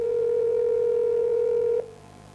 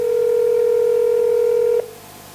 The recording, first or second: second